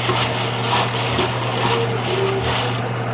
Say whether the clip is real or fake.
real